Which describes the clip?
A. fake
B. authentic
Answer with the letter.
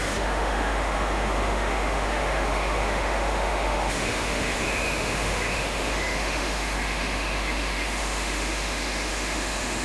A